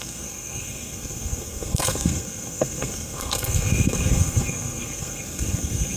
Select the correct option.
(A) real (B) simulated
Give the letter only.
B